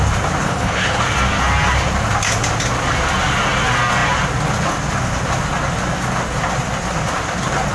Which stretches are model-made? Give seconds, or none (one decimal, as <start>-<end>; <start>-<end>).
0.4-1.0